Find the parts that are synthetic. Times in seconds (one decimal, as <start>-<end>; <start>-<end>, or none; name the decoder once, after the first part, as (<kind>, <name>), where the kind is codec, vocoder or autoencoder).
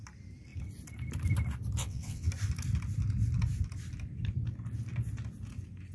1.8-2.3 (vocoder, WaveNeXt)